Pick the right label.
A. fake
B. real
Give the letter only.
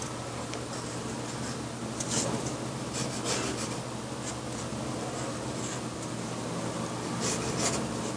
B